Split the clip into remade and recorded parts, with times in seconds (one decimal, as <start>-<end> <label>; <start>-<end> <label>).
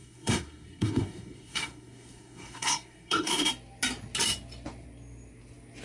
0.0-3.5 remade; 3.5-5.8 recorded